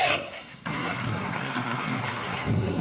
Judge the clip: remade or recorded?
remade